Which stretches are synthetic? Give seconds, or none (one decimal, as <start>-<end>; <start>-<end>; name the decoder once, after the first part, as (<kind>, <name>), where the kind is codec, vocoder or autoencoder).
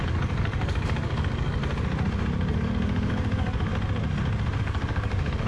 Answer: 0.0-1.6 (codec, DAC); 2.5-3.7; 4.6-5.5